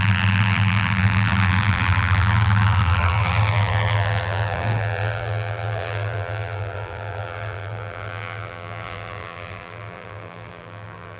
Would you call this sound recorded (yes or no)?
no